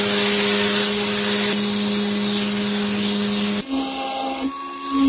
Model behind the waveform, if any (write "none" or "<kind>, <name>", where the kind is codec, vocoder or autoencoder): none